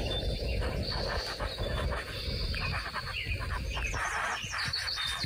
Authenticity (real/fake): real